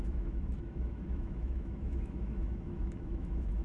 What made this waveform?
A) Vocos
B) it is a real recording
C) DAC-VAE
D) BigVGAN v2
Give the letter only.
C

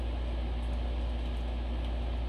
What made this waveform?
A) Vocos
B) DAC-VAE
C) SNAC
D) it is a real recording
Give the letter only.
D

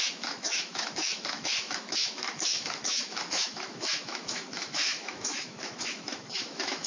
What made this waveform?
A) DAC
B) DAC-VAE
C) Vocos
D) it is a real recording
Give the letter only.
B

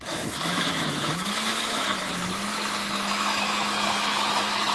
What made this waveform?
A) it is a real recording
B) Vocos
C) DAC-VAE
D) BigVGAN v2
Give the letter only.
C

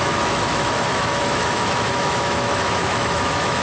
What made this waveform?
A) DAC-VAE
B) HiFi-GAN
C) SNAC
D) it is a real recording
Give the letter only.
A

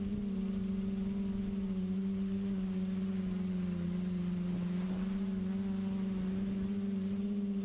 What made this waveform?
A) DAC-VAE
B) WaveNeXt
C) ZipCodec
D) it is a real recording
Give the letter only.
D